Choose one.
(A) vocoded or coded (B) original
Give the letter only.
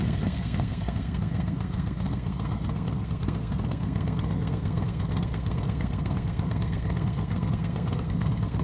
A